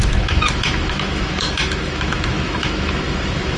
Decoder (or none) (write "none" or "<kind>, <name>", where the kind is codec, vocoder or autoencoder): autoencoder, DAC-VAE